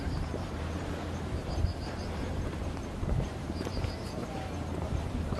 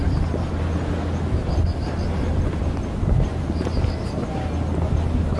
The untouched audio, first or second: second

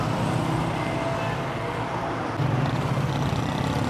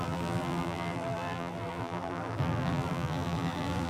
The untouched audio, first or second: first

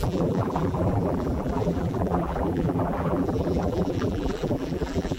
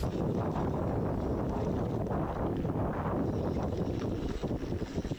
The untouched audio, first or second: second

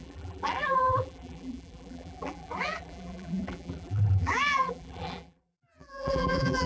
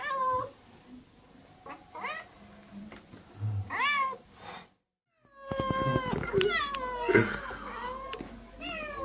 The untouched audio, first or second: second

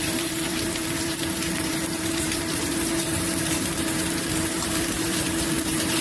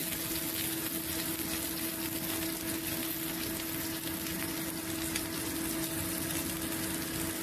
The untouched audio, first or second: second